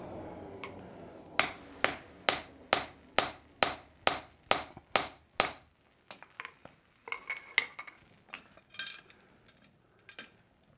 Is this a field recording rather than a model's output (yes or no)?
yes